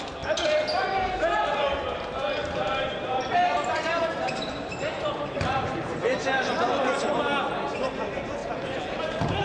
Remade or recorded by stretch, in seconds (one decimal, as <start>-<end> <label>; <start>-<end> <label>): 0.0-2.4 recorded; 2.4-7.5 remade; 7.5-9.4 recorded